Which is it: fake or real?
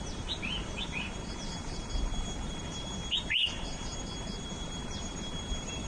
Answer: fake